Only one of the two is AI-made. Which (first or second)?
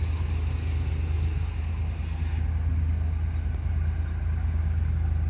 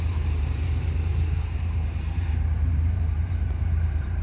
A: second